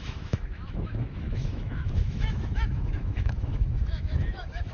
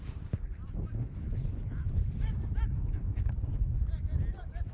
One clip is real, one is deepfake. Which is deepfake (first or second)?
first